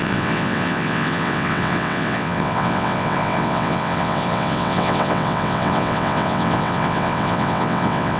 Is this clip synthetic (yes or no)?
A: yes